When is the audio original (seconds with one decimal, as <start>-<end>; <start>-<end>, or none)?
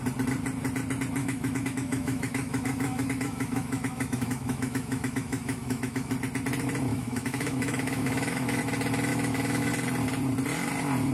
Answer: 0.0-1.2; 6.1-6.9; 8.6-9.1; 9.7-11.1